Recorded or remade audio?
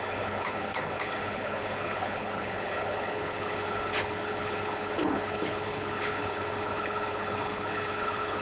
remade